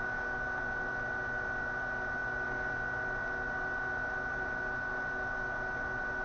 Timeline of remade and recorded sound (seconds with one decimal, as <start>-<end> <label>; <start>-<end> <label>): 0.0-6.2 recorded